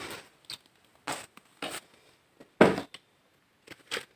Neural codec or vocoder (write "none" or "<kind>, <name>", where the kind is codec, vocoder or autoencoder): none